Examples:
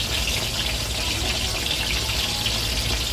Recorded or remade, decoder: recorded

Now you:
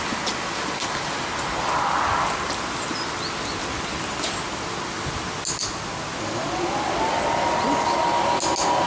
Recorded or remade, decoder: recorded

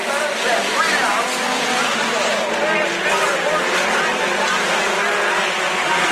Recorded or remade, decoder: remade, vocoder, BigVGAN v2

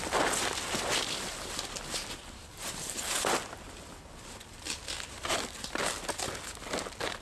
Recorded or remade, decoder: recorded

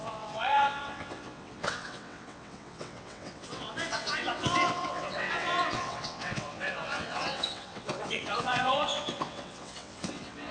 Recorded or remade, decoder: remade, vocoder, WaveNeXt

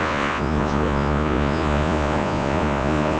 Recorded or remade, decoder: remade, vocoder, Vocos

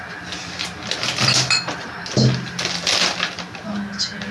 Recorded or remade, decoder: recorded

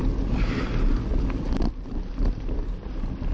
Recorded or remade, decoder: recorded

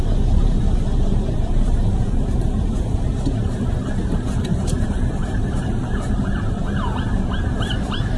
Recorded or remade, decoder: remade, vocoder, BigVGAN v2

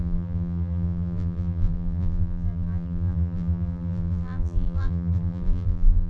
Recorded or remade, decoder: remade, vocoder, BigVGAN v2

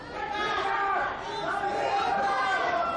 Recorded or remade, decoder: recorded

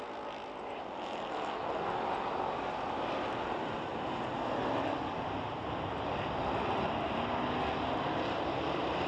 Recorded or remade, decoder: recorded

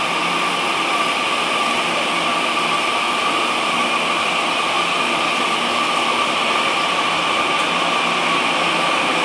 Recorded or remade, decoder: recorded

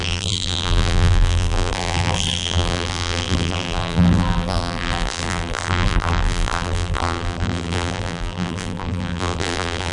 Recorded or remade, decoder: remade, vocoder, BigVGAN v2